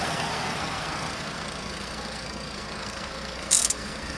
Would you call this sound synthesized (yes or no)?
yes